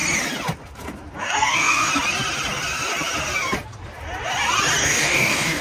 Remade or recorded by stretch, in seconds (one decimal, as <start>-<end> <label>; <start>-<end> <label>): 0.0-1.2 recorded; 1.2-1.9 remade; 1.9-4.8 recorded; 4.8-5.6 remade